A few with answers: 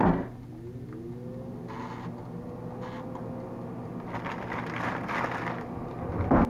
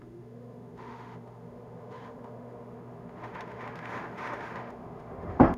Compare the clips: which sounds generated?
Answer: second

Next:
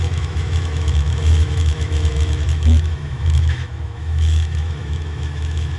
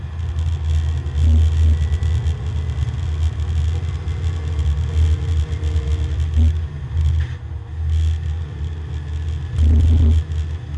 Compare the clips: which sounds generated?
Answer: first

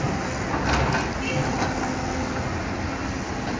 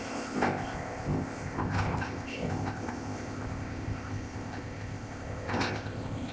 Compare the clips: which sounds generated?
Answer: second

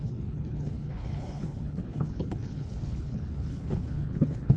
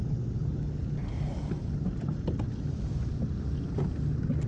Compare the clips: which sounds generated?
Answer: first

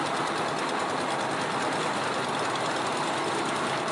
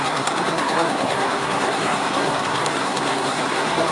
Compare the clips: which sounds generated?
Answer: second